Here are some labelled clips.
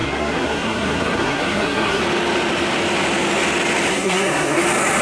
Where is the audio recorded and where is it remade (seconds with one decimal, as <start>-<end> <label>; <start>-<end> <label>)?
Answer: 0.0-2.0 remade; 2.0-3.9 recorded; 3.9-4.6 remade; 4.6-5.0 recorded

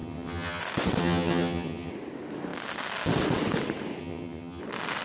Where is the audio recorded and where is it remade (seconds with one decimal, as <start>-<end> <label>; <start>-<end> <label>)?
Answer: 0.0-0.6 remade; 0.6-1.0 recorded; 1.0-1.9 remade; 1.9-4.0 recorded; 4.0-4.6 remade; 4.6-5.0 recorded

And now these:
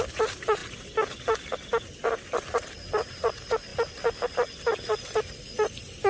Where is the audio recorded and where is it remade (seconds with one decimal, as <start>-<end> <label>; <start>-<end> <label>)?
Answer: 0.0-6.1 recorded

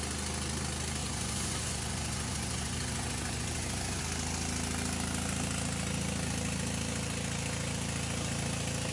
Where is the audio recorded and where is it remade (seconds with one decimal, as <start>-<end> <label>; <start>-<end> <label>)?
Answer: 0.0-1.0 recorded; 1.0-4.0 remade; 4.0-8.9 recorded

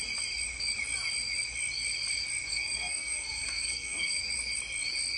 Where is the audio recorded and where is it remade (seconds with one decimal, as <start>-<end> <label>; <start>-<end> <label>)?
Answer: 0.0-2.5 recorded; 2.5-4.2 remade; 4.2-5.2 recorded

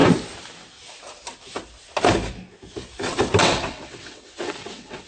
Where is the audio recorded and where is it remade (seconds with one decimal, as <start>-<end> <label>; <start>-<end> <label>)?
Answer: 0.0-3.4 recorded; 3.4-5.1 remade

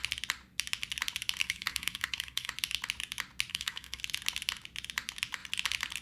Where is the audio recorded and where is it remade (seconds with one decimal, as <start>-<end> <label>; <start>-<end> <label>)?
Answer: 0.0-1.4 recorded; 1.4-2.5 remade; 2.5-3.5 recorded; 3.5-4.0 remade; 4.0-6.0 recorded

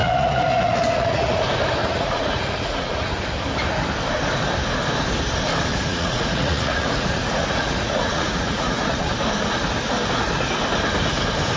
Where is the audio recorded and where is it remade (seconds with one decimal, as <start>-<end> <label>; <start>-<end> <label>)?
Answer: 0.0-1.4 remade; 1.4-1.8 recorded; 1.8-3.1 remade; 3.1-5.7 recorded; 5.7-9.1 remade; 9.1-11.6 recorded